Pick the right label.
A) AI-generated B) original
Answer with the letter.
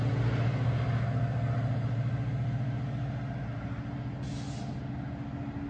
B